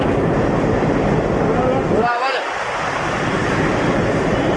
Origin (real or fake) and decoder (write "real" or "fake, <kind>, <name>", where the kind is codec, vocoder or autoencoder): real